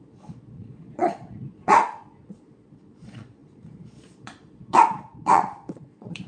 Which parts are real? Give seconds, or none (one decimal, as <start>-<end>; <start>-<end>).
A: none

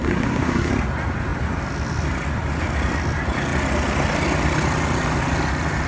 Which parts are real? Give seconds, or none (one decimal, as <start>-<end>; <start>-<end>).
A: 0.7-5.9

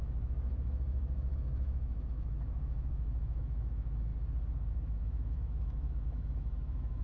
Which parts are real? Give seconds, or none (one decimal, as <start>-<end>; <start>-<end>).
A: 4.1-4.7